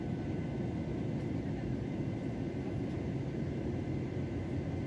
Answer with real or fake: real